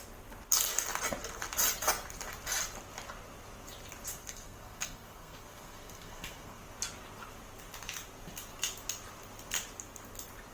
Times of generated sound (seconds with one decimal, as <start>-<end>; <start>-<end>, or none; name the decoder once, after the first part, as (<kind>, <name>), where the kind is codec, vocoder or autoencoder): 4.2-6.6 (codec, SNAC)

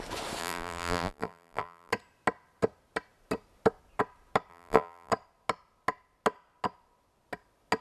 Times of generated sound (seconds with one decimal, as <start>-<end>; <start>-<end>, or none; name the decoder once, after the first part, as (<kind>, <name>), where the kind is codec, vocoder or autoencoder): 0.4-1.9 (vocoder, BigVGAN v2); 4.5-5.1

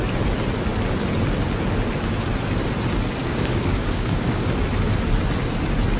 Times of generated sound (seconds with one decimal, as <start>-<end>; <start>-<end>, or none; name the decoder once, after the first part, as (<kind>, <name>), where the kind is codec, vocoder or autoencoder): 3.2-4.5 (codec, DAC)